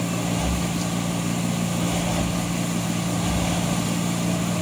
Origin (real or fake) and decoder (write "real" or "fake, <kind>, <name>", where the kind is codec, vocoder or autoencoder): real